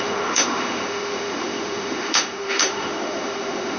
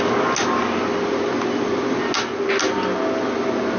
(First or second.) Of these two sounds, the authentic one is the second